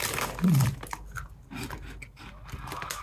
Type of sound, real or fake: real